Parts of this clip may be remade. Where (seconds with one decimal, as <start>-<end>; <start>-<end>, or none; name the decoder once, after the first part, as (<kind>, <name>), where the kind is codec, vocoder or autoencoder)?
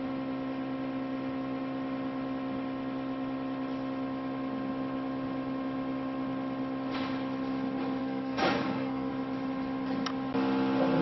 8.0-9.1 (codec, SNAC)